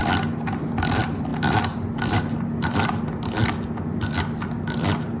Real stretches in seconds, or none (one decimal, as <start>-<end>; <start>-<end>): 0.0-5.2